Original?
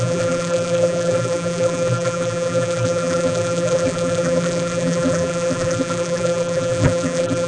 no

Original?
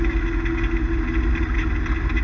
yes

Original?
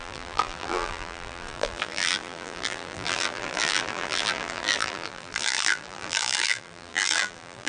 no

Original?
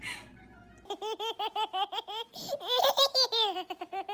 yes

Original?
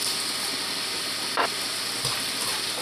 yes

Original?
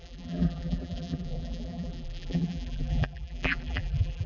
no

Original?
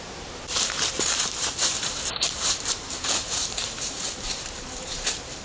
no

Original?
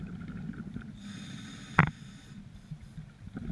yes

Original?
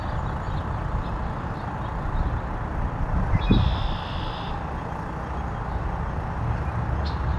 yes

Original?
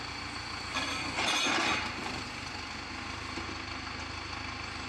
yes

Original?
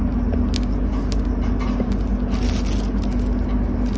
yes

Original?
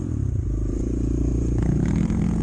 no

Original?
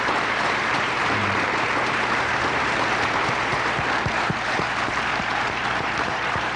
no